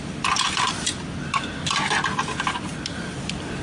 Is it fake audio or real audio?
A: real